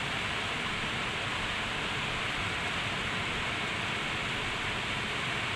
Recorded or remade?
recorded